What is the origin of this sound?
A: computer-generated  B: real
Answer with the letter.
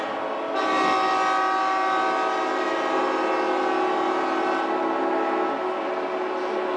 B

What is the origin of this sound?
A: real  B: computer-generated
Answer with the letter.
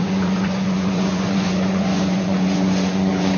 B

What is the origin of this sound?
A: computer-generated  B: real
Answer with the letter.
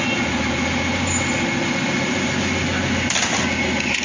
B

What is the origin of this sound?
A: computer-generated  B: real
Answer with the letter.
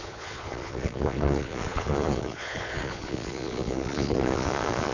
A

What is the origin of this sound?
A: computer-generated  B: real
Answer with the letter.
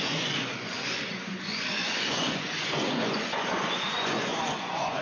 A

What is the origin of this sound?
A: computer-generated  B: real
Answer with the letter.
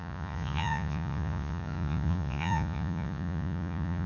A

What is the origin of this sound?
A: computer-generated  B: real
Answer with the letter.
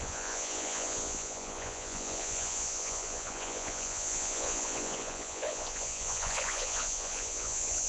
A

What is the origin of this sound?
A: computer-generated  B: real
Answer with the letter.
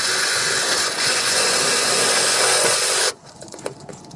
A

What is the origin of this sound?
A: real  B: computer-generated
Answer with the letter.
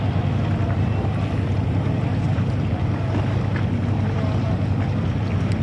A